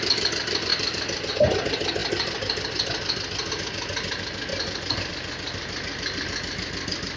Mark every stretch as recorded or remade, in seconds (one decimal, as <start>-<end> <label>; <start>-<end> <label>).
0.0-0.7 recorded; 0.7-1.3 remade; 1.3-7.2 recorded